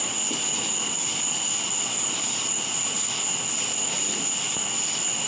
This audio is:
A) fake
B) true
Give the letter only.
B